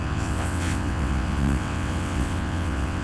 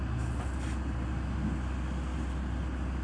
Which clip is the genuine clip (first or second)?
second